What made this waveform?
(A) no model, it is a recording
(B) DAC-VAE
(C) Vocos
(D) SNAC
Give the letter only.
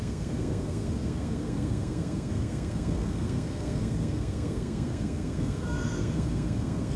D